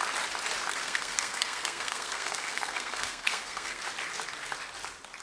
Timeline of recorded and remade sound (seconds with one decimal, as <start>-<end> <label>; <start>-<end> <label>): 0.0-0.7 recorded; 0.7-3.8 remade; 3.8-5.2 recorded